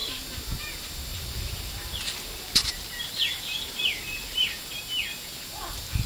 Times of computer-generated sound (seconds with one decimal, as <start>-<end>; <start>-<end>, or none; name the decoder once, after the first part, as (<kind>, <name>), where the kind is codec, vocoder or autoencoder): 1.1-4.8 (vocoder, BigVGAN v2)